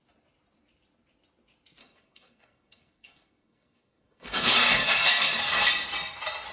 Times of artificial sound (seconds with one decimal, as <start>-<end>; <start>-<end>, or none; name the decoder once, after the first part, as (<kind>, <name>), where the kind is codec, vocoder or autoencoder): 1.8-5.7 (codec, SNAC)